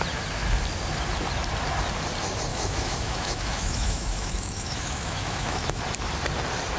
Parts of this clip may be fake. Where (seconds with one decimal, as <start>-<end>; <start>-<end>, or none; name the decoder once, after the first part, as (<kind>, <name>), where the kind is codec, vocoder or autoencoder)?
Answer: 2.5-5.8 (autoencoder, DAC-VAE)